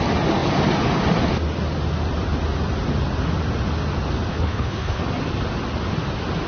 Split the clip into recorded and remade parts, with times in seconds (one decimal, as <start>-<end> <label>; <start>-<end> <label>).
0.0-4.3 recorded; 4.3-5.0 remade; 5.0-6.5 recorded